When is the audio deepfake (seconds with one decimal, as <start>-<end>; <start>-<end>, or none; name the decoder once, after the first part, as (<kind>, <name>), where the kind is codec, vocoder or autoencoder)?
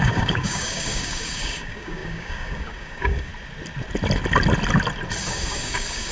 0.0-3.3 (codec, DAC); 5.2-6.1